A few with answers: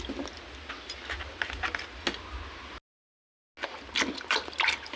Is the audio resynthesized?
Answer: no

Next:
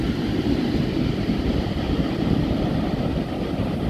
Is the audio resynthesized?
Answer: no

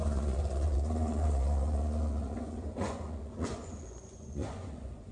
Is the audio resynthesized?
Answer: yes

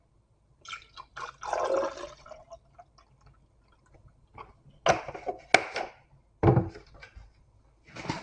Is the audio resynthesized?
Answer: no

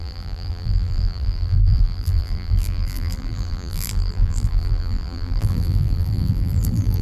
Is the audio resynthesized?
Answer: yes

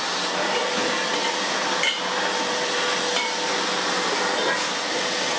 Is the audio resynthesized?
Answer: no